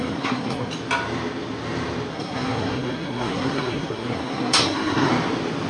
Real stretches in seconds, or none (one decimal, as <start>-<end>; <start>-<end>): 0.7-2.1; 5.1-5.7